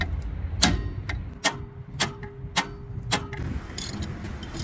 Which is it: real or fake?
real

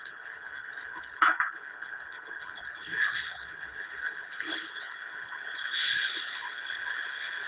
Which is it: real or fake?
fake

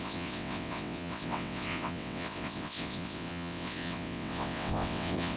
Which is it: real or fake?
fake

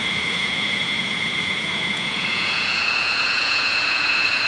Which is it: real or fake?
fake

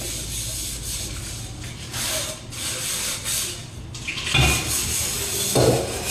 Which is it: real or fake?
real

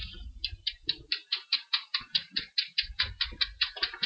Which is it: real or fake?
fake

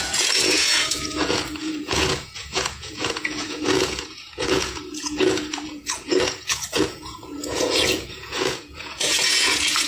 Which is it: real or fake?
fake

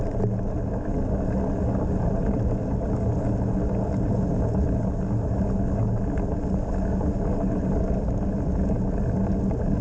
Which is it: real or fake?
real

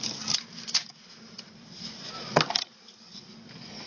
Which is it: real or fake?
real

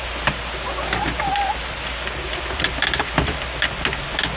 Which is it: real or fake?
real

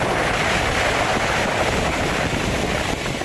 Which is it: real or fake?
real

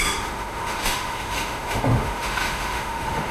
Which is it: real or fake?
fake